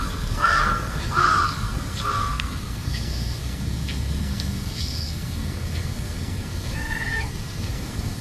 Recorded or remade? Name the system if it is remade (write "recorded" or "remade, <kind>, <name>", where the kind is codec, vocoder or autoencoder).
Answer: remade, codec, SNAC